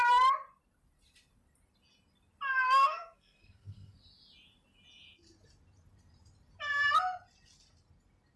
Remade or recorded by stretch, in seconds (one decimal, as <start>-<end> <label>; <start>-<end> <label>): 0.0-2.5 recorded; 2.5-4.0 remade; 4.0-8.4 recorded